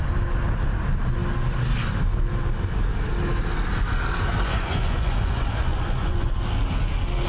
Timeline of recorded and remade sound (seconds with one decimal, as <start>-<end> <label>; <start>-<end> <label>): 0.0-4.3 recorded; 4.3-6.3 remade; 6.3-7.3 recorded